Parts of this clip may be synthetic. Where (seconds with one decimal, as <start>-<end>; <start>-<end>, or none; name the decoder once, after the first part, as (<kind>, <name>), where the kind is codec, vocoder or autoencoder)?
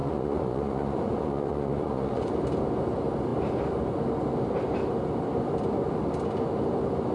0.0-2.3 (vocoder, Vocos)